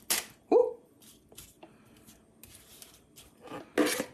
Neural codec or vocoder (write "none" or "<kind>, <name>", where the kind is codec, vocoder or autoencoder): none